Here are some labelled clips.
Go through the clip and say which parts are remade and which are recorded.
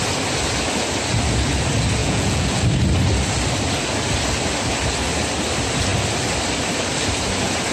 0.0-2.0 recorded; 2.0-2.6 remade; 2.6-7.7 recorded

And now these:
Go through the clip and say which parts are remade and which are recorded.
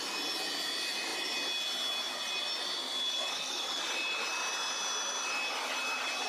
0.0-2.8 recorded; 2.8-3.8 remade; 3.8-6.3 recorded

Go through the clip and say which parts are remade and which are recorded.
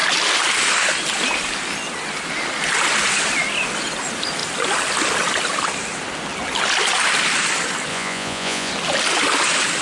0.0-7.9 recorded; 7.9-8.7 remade; 8.7-9.8 recorded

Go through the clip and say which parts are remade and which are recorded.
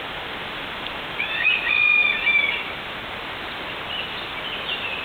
0.0-5.0 recorded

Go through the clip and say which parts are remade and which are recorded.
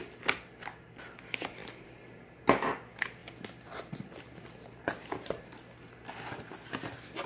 0.0-7.3 recorded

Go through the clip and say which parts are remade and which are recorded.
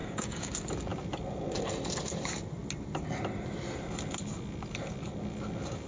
0.0-0.5 remade; 0.5-5.9 recorded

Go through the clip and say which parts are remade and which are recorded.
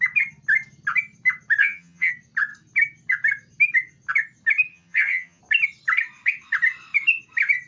0.0-1.6 recorded; 1.6-2.1 remade; 2.1-4.7 recorded; 4.7-5.4 remade; 5.4-7.7 recorded